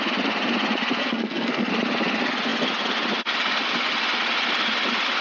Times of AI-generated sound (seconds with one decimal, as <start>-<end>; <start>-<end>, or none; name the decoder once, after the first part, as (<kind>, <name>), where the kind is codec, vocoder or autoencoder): 1.0-1.7 (codec, SNAC)